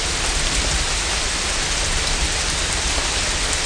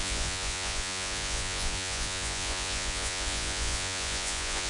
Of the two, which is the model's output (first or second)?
second